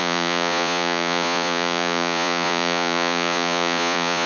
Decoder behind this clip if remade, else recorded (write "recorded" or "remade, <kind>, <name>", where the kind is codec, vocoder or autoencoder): remade, vocoder, Vocos